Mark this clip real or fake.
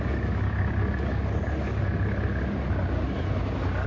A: real